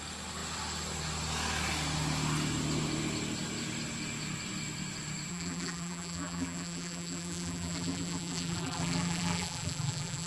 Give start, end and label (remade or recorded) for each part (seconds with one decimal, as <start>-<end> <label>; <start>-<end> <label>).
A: 0.0-5.3 recorded; 5.3-10.3 remade